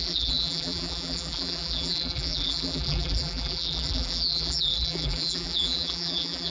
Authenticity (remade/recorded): remade